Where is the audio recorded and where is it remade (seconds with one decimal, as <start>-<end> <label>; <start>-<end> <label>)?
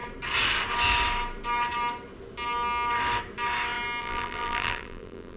0.0-4.0 recorded; 4.0-5.4 remade